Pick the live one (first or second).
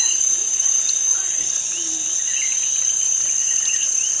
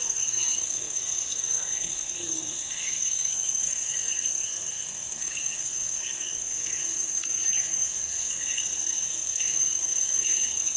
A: first